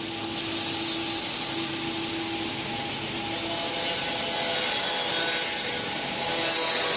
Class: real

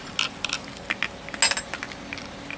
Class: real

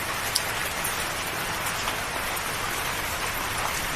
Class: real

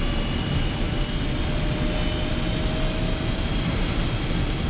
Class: real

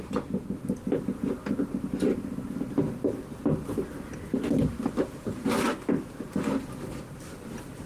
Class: real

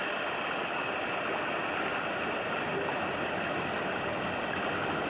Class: real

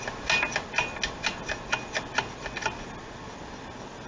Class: real